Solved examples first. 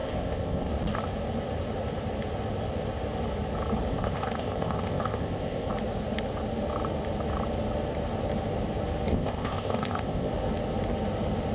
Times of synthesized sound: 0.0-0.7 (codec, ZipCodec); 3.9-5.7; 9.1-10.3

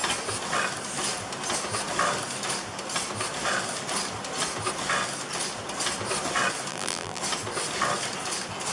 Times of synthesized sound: 6.7-7.2 (vocoder, BigVGAN v2)

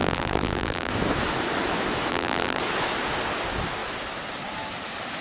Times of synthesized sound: 0.0-0.9 (vocoder, BigVGAN v2); 2.1-2.6

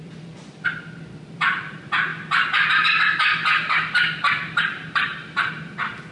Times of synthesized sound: 0.0-6.1 (vocoder, BigVGAN v2)

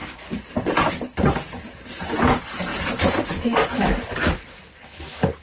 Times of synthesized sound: 0.0-0.9 (vocoder, BigVGAN v2); 2.7-4.4

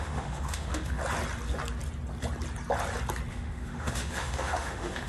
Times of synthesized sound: 0.0-1.0 (autoencoder, DAC-VAE); 3.3-5.1

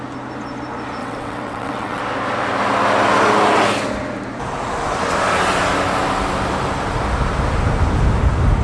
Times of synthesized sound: 1.0-2.0 (vocoder, WaveNeXt)

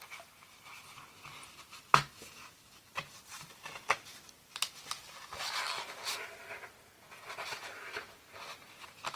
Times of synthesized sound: none